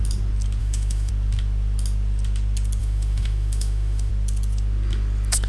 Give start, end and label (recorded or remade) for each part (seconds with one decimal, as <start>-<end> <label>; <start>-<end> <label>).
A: 0.0-0.6 recorded; 0.6-1.1 remade; 1.1-2.8 recorded; 2.8-4.1 remade; 4.1-5.5 recorded